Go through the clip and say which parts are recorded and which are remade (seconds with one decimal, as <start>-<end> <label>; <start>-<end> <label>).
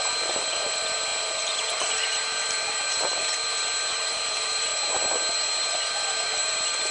0.0-1.1 remade; 1.1-4.1 recorded; 4.1-4.7 remade; 4.7-5.7 recorded; 5.7-6.9 remade